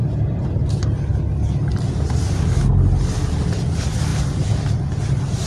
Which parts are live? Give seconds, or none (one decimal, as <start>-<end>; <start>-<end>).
0.0-5.5